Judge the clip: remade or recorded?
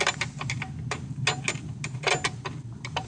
recorded